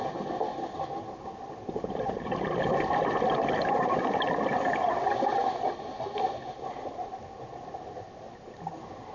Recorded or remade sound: recorded